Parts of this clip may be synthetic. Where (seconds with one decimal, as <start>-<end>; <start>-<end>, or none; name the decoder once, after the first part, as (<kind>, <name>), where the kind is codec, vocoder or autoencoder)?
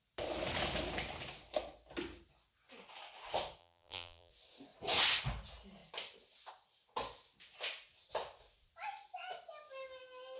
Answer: 3.6-4.3 (vocoder, BigVGAN v2)